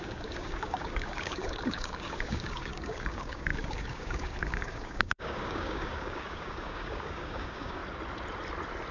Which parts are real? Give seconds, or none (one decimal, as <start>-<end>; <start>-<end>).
7.8-8.9